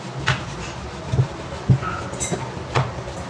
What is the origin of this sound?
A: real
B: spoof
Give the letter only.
A